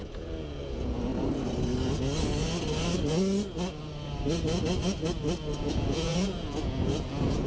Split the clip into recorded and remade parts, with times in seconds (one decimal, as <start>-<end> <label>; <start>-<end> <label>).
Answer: 0.0-1.1 remade; 1.1-5.6 recorded; 5.6-7.5 remade